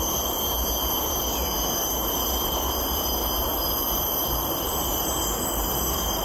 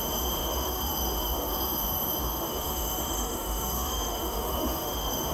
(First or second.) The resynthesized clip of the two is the second